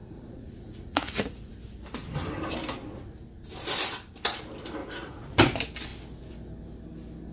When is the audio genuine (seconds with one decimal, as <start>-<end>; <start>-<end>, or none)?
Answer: 1.5-4.8; 5.3-7.3